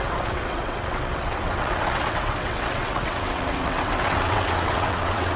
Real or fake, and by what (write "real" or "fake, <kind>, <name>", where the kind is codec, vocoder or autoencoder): fake, vocoder, WaveNeXt